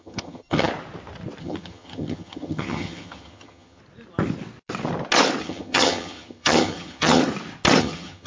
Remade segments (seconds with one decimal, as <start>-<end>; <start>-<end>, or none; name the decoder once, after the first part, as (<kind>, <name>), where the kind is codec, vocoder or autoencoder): 0.0-0.7 (vocoder, HiFi-GAN); 1.4-3.8; 5.4-7.2; 7.8-8.3